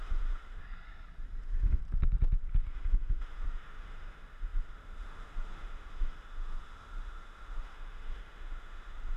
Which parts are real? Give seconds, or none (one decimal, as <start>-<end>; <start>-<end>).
0.6-1.4; 1.8-2.7